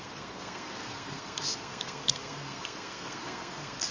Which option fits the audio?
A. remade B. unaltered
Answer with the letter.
A